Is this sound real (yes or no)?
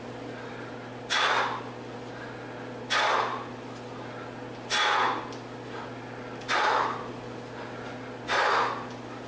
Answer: yes